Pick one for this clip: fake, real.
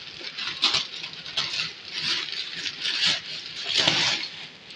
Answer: real